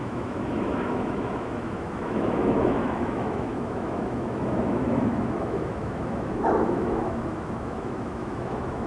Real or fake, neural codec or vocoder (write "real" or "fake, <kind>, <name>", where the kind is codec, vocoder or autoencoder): fake, autoencoder, DAC-VAE